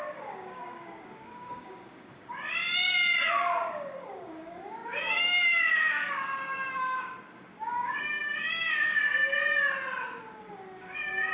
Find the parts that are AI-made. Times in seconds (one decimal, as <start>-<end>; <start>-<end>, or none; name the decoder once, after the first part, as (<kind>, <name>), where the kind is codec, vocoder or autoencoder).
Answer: 0.0-2.6 (codec, DAC); 3.3-9.0; 10.3-11.3